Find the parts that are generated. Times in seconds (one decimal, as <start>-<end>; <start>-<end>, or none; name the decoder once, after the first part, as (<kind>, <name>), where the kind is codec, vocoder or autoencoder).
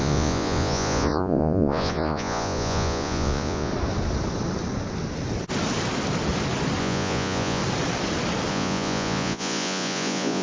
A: 0.0-3.7 (vocoder, Vocos); 6.8-7.6; 8.5-10.4